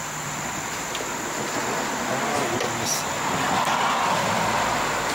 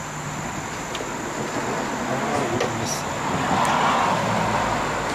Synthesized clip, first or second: first